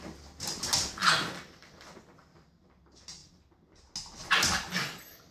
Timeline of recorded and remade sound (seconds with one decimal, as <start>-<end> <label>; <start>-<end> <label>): 0.0-5.3 recorded